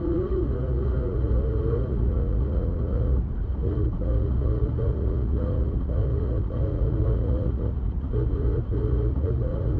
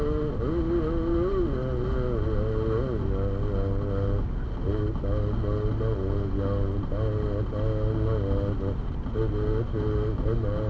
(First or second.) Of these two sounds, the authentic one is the second